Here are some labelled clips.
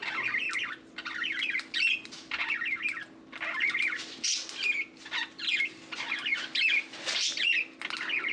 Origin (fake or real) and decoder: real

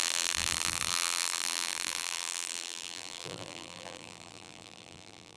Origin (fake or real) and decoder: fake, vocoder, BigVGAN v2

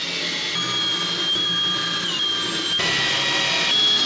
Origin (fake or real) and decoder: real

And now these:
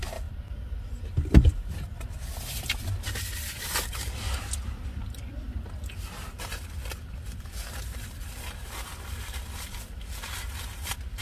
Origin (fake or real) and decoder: fake, vocoder, BigVGAN v2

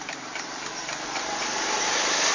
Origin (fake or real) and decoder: fake, vocoder, BigVGAN v2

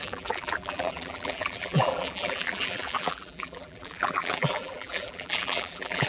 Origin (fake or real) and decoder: fake, vocoder, BigVGAN v2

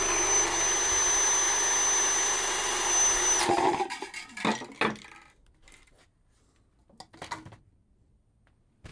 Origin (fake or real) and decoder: real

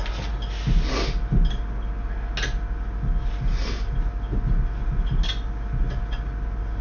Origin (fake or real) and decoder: real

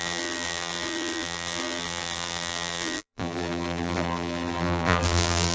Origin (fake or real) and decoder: fake, vocoder, BigVGAN v2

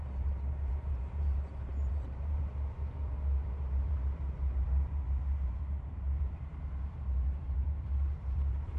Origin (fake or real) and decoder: fake, vocoder, BigVGAN v2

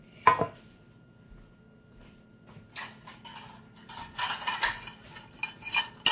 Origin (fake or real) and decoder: real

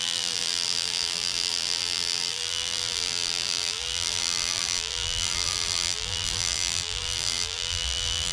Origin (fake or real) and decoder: fake, vocoder, BigVGAN v2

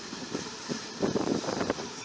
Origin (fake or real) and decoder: fake, vocoder, BigVGAN v2